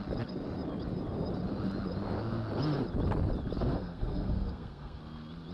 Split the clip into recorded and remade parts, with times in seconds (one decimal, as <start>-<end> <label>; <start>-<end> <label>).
0.0-3.7 recorded; 3.7-5.0 remade; 5.0-5.5 recorded